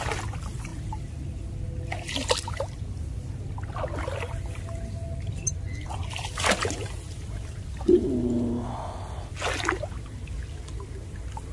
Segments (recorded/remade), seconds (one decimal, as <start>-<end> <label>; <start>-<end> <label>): 0.0-11.5 recorded